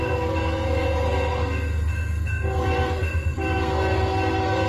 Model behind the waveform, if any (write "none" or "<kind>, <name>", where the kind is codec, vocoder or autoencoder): codec, SNAC